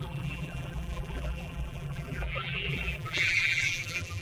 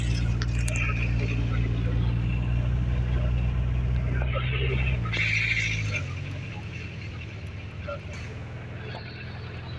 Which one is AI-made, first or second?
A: first